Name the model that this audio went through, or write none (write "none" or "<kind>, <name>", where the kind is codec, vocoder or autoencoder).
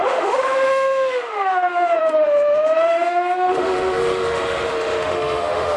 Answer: autoencoder, DAC-VAE